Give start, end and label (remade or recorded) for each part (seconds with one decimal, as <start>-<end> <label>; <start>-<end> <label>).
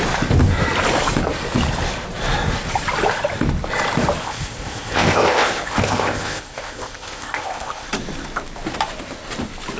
0.0-4.2 recorded; 4.2-7.9 remade; 7.9-9.8 recorded